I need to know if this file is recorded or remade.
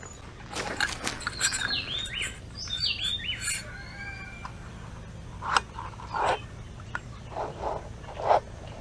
recorded